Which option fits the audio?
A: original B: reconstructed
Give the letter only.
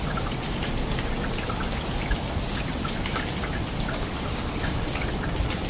A